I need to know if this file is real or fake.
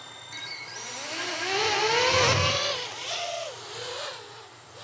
real